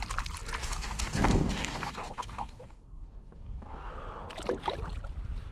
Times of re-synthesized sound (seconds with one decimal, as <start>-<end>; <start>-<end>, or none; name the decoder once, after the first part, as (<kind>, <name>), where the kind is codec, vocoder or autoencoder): 0.6-3.9 (codec, DAC)